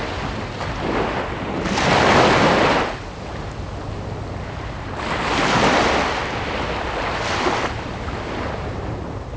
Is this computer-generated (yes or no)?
no